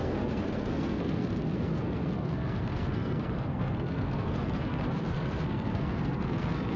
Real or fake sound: fake